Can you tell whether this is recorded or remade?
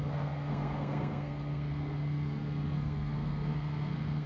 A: remade